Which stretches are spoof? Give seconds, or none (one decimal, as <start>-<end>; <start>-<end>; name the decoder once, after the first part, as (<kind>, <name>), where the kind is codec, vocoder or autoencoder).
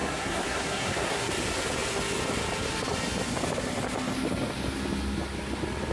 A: 0.0-1.3 (codec, SNAC)